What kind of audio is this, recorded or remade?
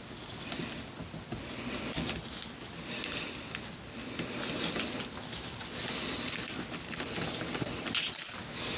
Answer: recorded